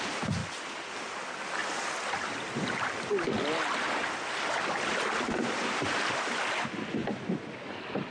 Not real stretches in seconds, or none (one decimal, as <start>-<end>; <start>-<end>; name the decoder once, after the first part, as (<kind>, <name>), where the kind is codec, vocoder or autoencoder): 1.6-5.6 (vocoder, BigVGAN v2)